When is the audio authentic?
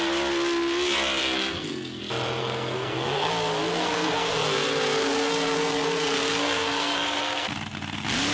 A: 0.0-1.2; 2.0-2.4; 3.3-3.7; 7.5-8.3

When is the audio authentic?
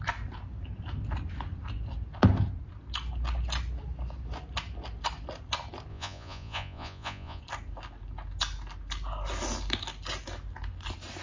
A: 0.0-5.9; 7.4-11.2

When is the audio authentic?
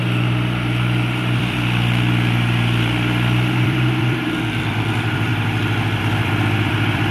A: 5.3-6.0